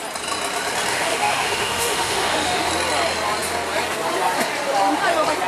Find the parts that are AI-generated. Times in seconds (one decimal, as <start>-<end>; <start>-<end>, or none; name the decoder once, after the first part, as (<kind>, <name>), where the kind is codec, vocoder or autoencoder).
0.9-2.7 (autoencoder, DAC-VAE)